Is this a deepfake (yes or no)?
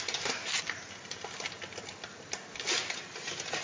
no